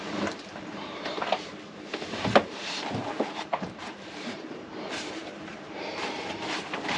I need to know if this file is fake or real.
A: fake